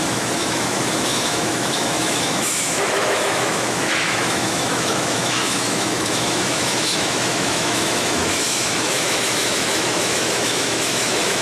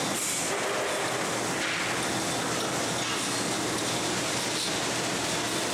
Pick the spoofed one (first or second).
first